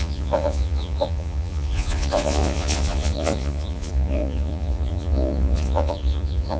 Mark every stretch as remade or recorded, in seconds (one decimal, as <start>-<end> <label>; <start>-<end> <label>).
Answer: 0.0-6.6 remade